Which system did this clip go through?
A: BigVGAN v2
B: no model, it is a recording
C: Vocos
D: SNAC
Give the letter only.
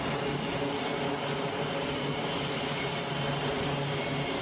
B